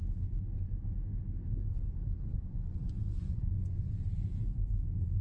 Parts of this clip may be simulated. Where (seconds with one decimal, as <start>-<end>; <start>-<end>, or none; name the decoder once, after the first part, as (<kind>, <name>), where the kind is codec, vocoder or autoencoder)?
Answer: 2.3-3.9 (vocoder, Vocos)